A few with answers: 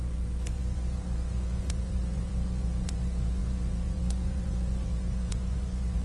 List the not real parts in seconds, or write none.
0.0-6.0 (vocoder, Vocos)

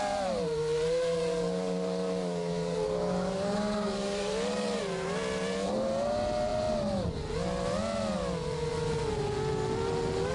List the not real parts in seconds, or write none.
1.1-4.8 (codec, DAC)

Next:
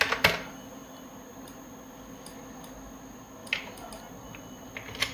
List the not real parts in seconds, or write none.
none

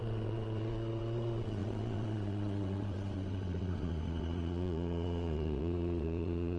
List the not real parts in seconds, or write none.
0.0-6.6 (vocoder, WaveNeXt)